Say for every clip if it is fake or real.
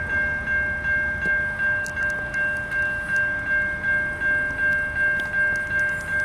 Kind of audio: real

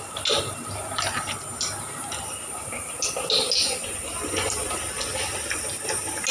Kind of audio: real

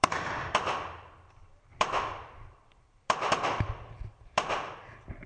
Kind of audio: fake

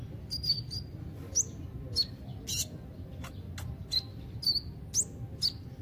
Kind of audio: real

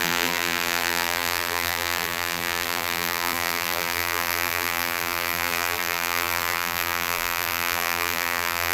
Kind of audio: fake